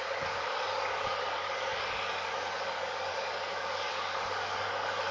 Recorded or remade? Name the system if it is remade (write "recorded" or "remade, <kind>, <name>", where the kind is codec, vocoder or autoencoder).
remade, codec, DAC